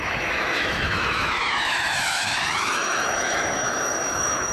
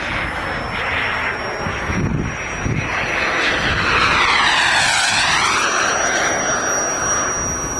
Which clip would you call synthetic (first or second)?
first